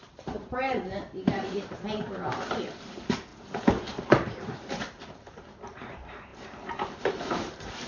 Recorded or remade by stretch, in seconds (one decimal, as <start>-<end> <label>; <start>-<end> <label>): 0.0-7.9 remade